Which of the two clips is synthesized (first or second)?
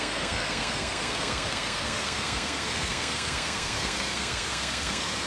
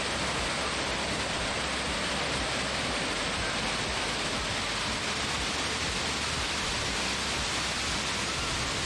first